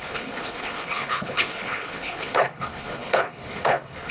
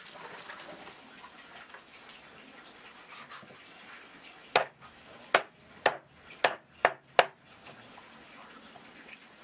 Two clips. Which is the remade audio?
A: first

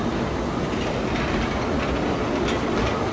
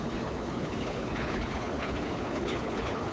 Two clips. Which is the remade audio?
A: second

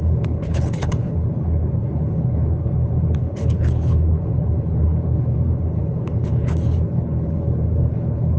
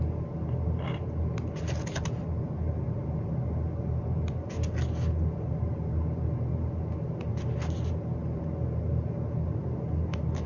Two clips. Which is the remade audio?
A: first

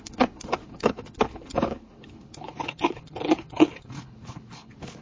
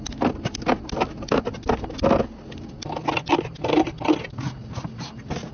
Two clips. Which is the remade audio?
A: first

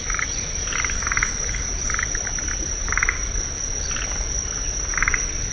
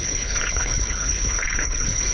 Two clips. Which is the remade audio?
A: second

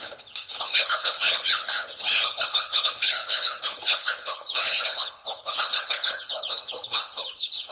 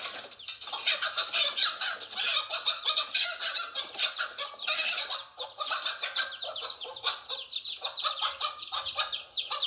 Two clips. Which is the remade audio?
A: first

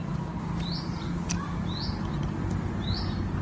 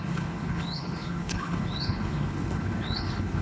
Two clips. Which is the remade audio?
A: second